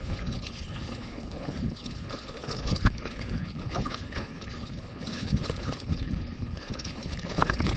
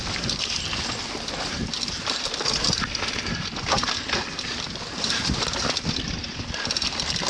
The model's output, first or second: first